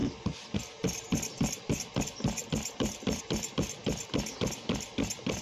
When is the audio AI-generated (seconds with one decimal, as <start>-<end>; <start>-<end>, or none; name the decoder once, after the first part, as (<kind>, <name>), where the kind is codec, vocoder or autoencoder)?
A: 0.0-3.8 (vocoder, BigVGAN v2); 4.5-5.4